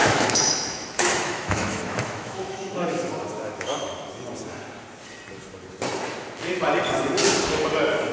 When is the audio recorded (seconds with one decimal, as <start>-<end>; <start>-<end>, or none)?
4.1-8.1